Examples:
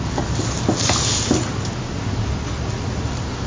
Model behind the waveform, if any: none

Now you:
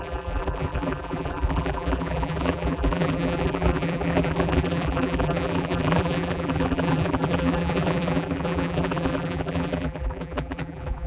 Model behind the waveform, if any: vocoder, BigVGAN v2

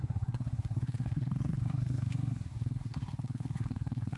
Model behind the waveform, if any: codec, SNAC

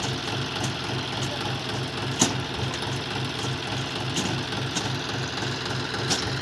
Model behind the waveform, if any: none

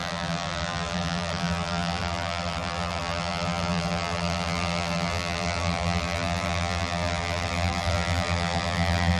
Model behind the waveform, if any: vocoder, BigVGAN v2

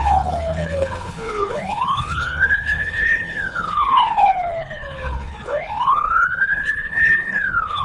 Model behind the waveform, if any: codec, HILCodec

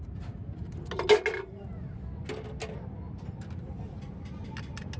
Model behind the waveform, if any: none